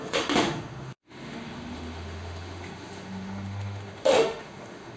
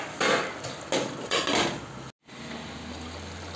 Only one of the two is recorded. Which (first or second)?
second